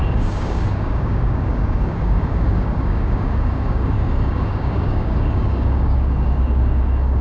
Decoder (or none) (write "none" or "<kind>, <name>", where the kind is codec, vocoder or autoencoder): codec, DAC